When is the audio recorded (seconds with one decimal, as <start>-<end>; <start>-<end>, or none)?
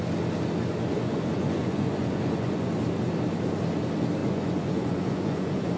0.0-0.9; 2.7-4.2